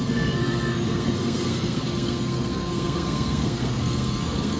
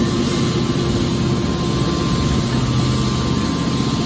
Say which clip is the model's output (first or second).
first